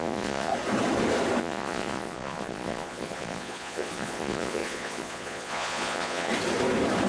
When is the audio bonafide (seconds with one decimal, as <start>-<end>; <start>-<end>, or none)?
0.5-1.4; 6.3-7.1